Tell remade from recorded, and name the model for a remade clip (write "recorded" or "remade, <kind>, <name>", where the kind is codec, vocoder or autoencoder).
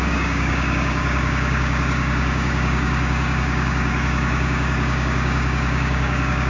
remade, codec, DAC